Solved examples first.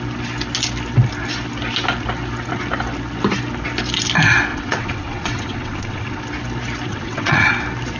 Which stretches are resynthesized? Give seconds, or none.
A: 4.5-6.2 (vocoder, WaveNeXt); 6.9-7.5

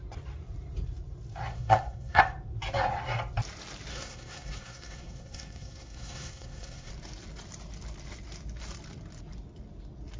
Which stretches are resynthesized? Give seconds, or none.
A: 1.5-2.2 (codec, SNAC); 3.9-6.9